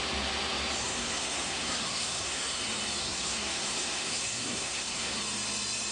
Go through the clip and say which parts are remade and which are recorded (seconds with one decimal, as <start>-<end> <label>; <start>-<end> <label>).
0.0-0.8 recorded; 0.8-2.6 remade; 2.6-3.0 recorded; 3.0-5.2 remade; 5.2-5.9 recorded